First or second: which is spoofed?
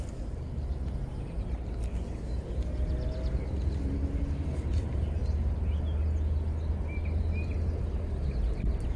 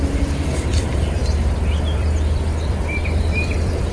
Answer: second